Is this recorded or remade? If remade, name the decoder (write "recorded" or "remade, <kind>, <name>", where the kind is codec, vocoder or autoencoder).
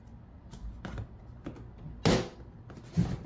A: recorded